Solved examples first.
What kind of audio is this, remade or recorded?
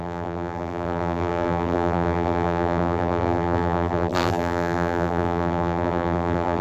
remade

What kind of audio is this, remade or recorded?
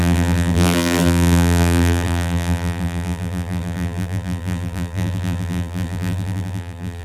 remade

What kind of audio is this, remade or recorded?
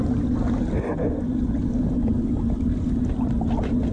recorded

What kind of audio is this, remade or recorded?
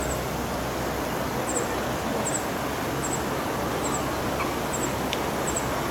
recorded